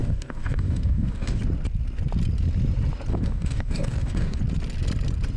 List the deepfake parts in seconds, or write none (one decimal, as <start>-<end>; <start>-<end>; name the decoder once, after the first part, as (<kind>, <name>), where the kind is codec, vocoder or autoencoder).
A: 0.0-1.4 (codec, DAC); 3.1-4.4